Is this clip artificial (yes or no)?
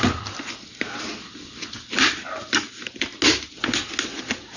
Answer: no